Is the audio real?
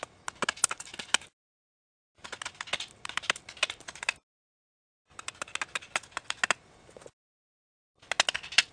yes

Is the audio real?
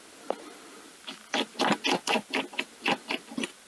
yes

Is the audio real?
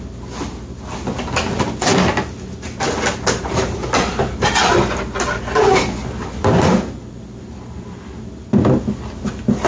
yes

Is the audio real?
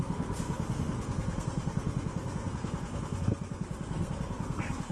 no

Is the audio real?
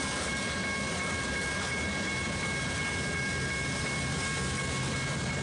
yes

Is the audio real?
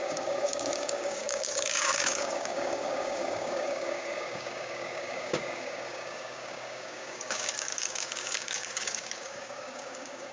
no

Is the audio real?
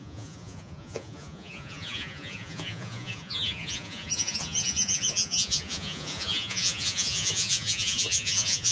no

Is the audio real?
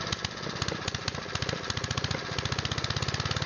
yes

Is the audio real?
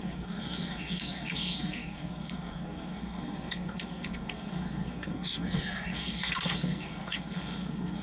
no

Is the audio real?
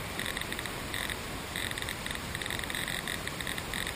no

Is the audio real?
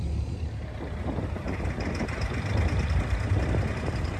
yes